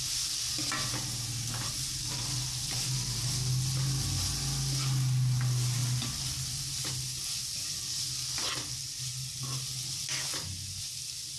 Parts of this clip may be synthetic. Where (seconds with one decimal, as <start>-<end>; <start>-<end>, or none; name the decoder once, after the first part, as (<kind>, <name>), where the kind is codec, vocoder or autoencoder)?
none